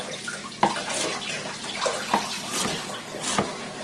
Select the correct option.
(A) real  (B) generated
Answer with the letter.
A